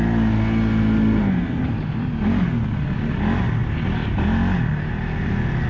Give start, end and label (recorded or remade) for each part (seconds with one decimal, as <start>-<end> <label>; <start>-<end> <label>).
0.0-5.7 recorded